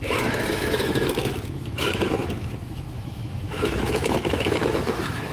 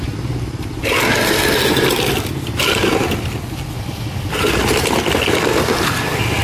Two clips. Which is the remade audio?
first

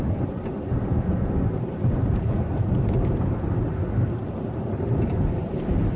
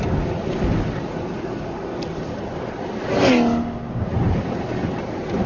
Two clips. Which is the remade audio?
first